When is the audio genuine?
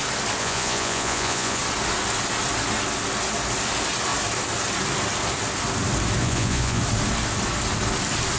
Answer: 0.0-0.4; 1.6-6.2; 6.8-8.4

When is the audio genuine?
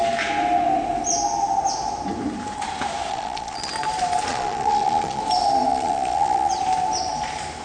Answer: 0.0-3.1; 3.7-4.3; 5.2-5.7; 6.5-7.6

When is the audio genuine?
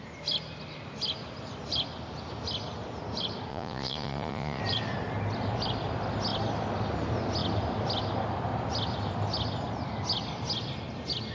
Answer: 0.0-3.5; 4.6-11.3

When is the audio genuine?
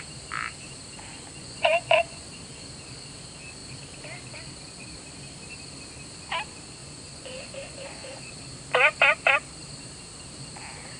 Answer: 0.0-1.4; 2.3-6.8; 8.2-11.0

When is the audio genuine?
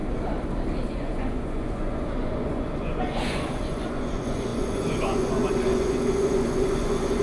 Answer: 0.0-0.9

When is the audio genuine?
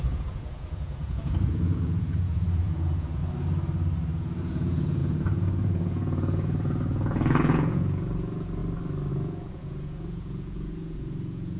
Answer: 3.2-4.4; 8.6-9.1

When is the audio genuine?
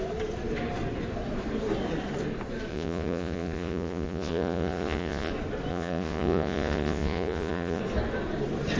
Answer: 0.0-2.7; 5.3-5.7; 7.8-8.8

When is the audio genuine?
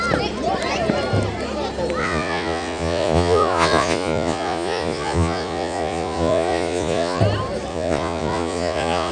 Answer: 0.0-2.0; 7.2-7.7